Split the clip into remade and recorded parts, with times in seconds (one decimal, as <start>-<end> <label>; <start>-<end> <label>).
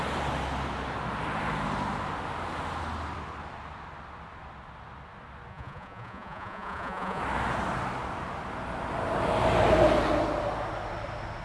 0.0-5.5 recorded; 5.5-7.2 remade; 7.2-11.4 recorded